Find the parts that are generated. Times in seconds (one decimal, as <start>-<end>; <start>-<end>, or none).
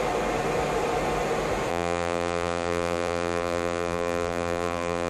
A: 1.7-5.1